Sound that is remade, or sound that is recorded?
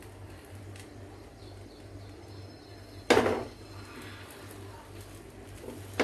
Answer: recorded